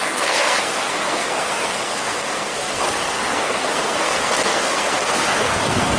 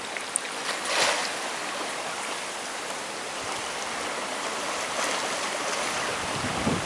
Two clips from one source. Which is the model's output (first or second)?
first